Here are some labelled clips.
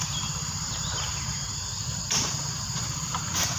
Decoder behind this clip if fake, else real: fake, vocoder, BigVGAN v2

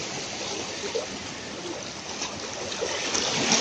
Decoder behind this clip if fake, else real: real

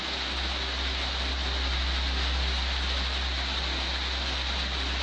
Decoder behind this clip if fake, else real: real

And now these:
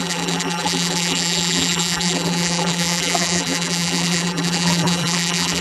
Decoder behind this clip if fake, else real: fake, vocoder, BigVGAN v2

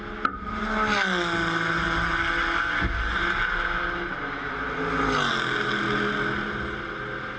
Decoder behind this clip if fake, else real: real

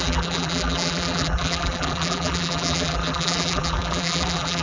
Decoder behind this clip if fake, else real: fake, vocoder, BigVGAN v2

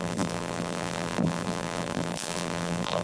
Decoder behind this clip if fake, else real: fake, vocoder, BigVGAN v2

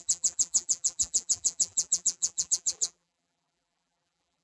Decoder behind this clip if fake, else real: fake, vocoder, BigVGAN v2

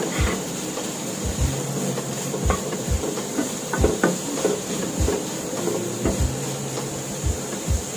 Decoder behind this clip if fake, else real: fake, vocoder, BigVGAN v2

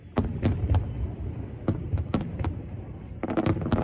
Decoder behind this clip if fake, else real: real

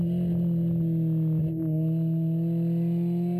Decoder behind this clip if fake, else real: real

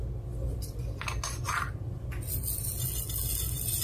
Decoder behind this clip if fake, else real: real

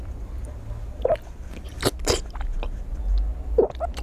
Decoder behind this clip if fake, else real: real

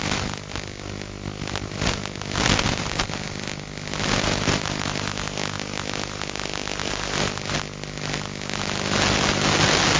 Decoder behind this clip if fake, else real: real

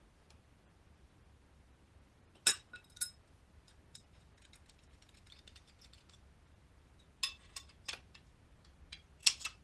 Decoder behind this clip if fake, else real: real